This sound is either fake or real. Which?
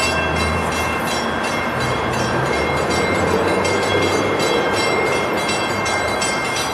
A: fake